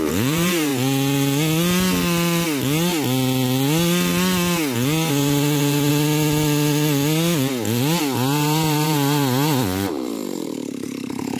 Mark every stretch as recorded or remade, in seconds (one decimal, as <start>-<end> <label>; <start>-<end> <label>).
0.0-0.7 remade; 0.7-5.1 recorded; 5.1-5.9 remade; 5.9-8.0 recorded; 8.0-11.4 remade